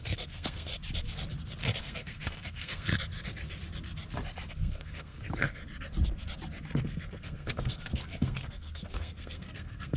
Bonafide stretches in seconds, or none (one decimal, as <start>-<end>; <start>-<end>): 0.7-1.8; 2.9-4.5; 5.6-6.8